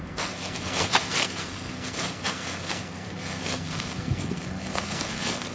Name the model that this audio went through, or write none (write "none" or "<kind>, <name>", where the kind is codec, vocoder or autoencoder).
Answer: codec, SNAC